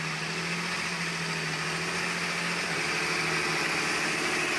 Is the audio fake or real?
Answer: real